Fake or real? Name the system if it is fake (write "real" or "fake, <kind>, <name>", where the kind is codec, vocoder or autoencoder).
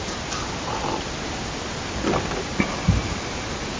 real